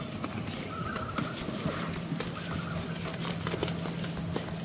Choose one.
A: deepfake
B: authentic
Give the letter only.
B